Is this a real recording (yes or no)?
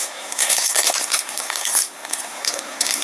no